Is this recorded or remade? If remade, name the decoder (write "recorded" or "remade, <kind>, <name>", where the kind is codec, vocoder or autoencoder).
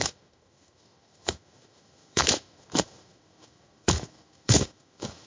remade, autoencoder, DAC-VAE